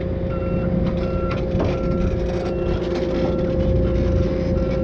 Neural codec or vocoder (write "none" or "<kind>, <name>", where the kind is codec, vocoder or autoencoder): none